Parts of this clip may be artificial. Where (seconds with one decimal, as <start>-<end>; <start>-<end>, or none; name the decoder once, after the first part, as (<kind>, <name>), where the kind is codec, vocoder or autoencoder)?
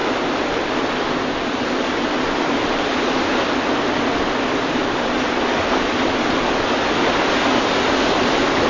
none